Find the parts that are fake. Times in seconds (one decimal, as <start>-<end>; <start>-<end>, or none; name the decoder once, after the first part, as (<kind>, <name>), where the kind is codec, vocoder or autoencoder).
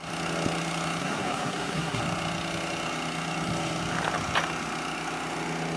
1.0-2.0 (codec, SNAC)